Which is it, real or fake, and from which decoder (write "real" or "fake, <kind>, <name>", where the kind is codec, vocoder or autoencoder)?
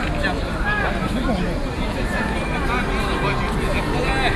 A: real